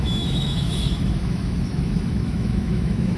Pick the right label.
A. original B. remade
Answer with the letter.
B